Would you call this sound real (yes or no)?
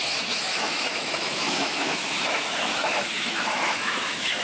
no